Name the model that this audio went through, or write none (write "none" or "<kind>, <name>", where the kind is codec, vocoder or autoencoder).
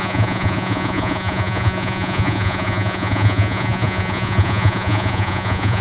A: vocoder, Vocos